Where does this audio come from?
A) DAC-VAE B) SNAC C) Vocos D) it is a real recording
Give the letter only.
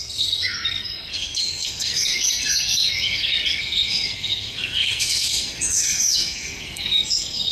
B